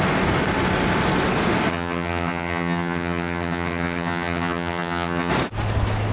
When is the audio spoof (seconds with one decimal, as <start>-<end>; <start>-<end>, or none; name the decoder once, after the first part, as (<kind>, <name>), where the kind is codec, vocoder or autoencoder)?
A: 1.7-5.3 (vocoder, HiFi-GAN)